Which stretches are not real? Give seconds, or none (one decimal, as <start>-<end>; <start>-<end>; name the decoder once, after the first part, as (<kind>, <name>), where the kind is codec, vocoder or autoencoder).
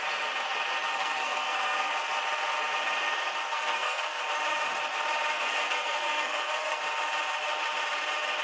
1.0-1.9 (codec, SNAC); 3.5-4.2; 5.3-6.8